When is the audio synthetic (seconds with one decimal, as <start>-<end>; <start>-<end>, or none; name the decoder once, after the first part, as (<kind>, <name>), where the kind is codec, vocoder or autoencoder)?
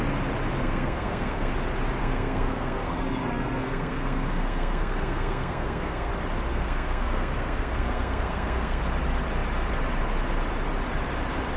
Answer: 0.6-1.5 (codec, SNAC); 2.0-6.1; 6.5-8.8